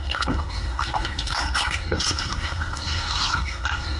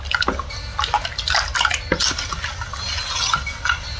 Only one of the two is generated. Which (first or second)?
first